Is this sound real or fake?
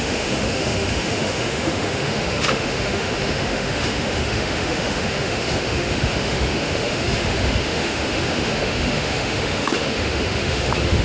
fake